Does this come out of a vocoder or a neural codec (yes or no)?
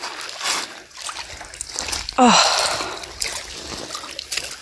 no